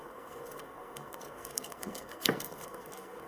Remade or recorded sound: remade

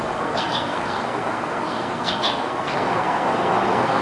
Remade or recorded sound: remade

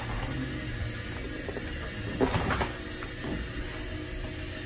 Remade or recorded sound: recorded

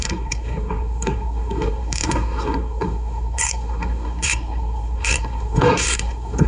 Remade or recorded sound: remade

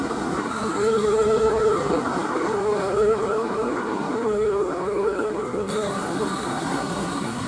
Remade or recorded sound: remade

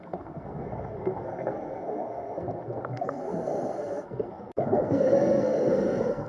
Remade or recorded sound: remade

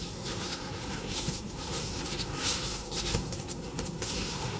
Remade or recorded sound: remade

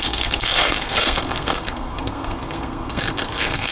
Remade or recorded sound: remade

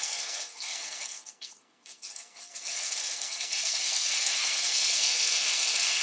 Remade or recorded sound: remade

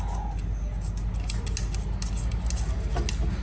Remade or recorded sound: recorded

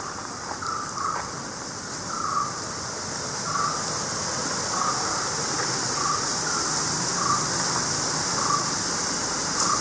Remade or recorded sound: recorded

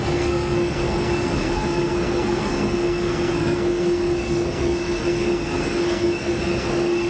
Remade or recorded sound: remade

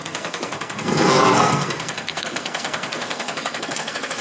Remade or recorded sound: remade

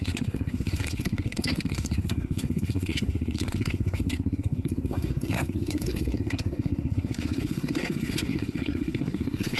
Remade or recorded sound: remade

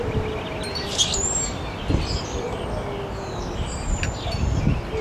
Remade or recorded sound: recorded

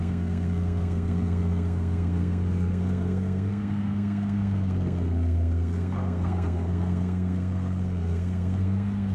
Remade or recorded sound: remade